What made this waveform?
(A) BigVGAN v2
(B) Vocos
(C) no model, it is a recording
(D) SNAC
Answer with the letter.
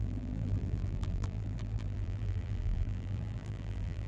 A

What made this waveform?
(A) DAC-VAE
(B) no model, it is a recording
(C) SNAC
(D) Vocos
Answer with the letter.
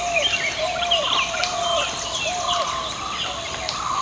B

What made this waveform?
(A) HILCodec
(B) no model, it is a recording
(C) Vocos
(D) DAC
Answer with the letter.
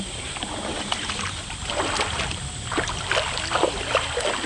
B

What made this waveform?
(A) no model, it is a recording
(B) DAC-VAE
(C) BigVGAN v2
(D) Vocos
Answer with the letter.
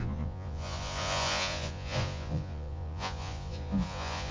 D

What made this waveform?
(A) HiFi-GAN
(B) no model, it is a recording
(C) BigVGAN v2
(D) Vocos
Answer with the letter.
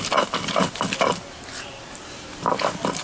B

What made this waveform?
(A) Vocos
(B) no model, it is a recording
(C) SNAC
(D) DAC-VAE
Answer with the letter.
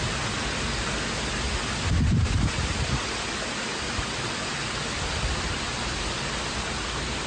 B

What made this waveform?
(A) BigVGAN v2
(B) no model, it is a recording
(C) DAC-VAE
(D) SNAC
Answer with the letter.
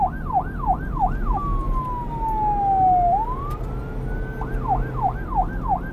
B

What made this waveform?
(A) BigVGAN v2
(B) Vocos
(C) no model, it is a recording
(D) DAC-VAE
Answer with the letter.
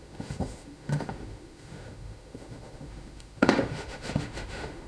D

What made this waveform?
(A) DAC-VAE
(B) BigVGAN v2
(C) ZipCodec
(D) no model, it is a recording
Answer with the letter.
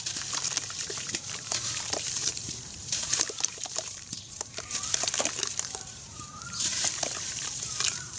B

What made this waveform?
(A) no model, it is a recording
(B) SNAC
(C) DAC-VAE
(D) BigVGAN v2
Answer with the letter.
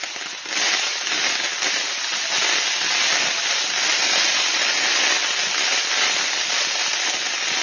A